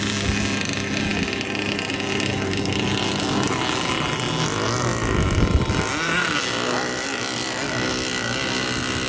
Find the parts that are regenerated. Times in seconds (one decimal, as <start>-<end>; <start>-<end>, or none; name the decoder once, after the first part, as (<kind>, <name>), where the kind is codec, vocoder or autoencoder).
none